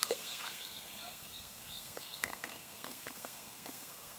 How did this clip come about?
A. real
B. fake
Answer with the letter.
B